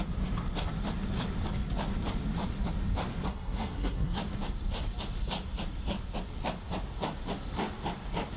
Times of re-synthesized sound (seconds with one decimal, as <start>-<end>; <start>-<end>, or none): 3.3-4.2